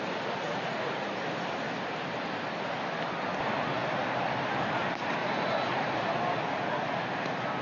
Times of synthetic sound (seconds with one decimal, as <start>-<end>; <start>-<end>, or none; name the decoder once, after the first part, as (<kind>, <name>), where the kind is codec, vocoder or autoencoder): 0.5-1.1 (vocoder, Vocos); 5.2-5.9